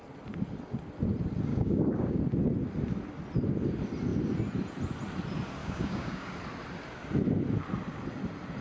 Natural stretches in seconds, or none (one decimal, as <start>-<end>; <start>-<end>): 0.0-1.5; 2.2-5.6; 6.3-8.6